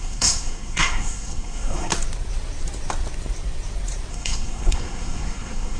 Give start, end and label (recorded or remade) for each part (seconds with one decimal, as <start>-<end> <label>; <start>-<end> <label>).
0.0-1.9 remade; 1.9-4.1 recorded; 4.1-5.8 remade